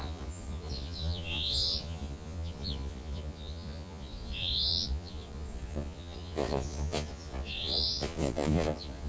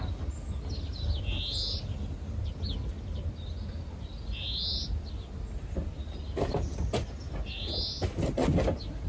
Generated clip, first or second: first